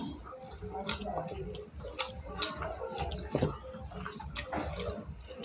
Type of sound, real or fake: real